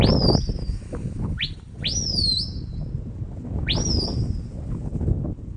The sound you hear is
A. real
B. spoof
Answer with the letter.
A